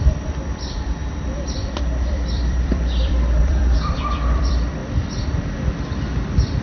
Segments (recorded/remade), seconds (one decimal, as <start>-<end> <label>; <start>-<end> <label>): 0.0-4.8 remade; 4.8-5.7 recorded; 5.7-6.6 remade